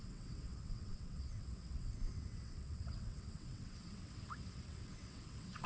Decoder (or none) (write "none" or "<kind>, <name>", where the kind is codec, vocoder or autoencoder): vocoder, WaveNeXt